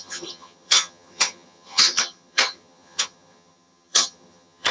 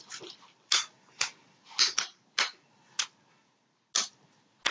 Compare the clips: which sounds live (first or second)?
second